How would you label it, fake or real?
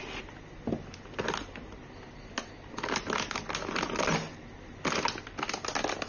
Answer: real